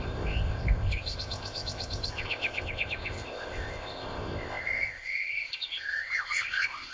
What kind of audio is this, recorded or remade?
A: remade